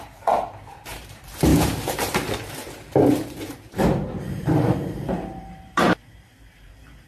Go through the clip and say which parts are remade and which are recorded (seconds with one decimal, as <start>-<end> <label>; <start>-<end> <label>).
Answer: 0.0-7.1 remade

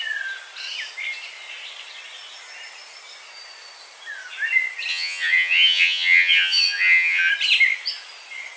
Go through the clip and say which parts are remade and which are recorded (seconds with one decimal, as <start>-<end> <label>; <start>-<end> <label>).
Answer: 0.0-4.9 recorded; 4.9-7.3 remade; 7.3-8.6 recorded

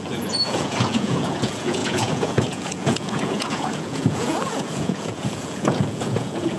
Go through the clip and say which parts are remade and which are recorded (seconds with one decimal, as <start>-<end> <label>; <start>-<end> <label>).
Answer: 0.0-6.6 remade